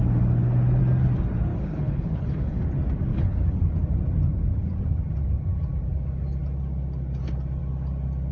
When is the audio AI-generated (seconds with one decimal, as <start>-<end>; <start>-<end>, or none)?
1.5-2.6; 3.1-3.6